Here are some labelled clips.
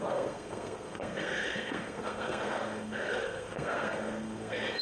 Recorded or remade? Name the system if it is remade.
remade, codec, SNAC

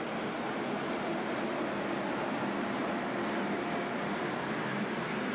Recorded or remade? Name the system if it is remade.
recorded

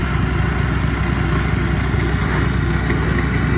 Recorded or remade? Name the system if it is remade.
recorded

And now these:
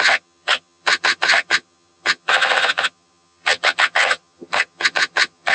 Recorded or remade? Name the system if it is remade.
remade, vocoder, HiFi-GAN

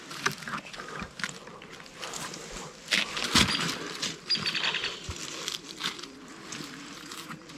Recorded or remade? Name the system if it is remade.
recorded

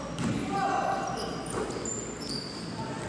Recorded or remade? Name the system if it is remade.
recorded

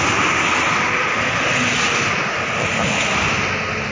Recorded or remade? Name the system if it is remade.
recorded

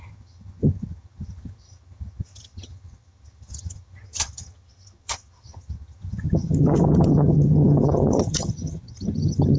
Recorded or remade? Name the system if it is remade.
remade, vocoder, HiFi-GAN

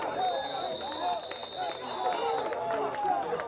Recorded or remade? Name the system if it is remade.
recorded